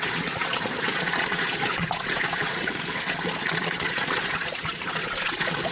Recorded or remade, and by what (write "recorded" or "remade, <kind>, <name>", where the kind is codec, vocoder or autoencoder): remade, vocoder, Vocos